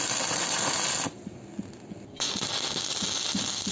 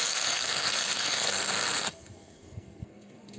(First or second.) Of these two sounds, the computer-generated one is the second